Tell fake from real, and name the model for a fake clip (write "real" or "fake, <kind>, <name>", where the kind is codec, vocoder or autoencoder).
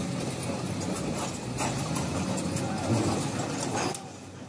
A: real